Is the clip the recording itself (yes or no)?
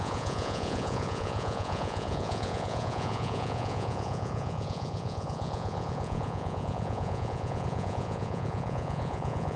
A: no